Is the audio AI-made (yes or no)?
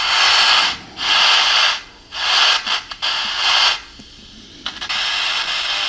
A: no